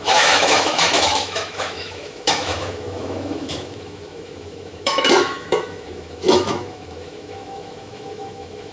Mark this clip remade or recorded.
remade